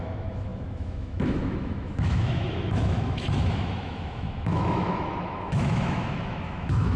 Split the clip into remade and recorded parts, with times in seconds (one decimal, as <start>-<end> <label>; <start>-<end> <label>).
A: 0.0-7.0 remade